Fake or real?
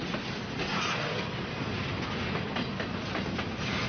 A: real